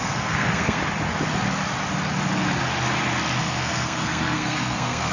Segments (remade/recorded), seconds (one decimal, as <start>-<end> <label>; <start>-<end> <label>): 0.0-0.8 remade; 0.8-3.4 recorded; 3.4-5.1 remade